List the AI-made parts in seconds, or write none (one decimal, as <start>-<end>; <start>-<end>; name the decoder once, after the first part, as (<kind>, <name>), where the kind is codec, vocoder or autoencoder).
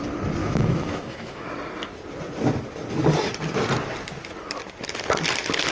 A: 0.4-1.5 (autoencoder, DAC-VAE)